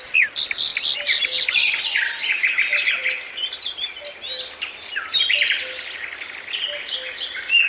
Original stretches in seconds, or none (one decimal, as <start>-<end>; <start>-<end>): 0.0-7.7